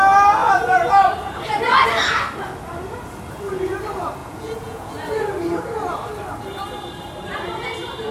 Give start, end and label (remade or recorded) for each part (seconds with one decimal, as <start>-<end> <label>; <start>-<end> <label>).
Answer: 0.0-4.2 recorded; 4.2-4.9 remade; 4.9-8.1 recorded